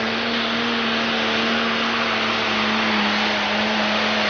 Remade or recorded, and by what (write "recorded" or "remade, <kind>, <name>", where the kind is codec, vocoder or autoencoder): recorded